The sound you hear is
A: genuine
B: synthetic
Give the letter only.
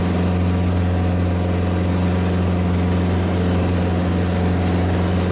A